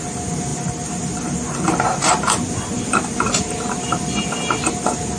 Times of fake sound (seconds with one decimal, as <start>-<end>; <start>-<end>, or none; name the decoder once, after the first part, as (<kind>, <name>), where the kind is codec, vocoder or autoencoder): none

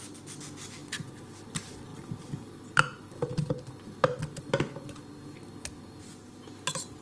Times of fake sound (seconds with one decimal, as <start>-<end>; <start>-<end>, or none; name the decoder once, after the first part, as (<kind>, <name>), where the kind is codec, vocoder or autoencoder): none

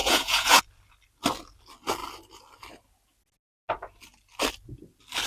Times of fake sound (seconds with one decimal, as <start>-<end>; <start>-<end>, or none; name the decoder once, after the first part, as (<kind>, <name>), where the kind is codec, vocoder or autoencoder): 0.0-0.6 (vocoder, Vocos)

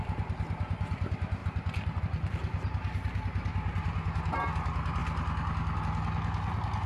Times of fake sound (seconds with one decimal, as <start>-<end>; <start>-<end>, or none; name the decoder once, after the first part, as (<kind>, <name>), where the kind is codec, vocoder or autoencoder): none

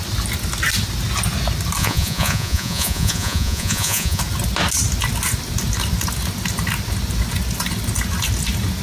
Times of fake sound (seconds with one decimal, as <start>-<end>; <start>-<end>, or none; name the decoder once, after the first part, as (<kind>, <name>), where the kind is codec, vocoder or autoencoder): 1.8-4.2 (vocoder, Vocos)

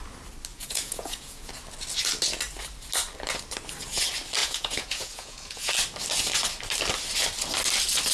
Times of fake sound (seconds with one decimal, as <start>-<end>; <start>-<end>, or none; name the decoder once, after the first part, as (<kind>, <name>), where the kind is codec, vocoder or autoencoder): 0.5-1.5 (vocoder, Vocos); 4.4-5.7